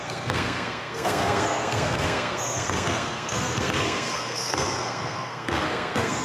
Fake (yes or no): yes